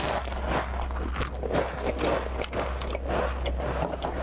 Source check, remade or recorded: recorded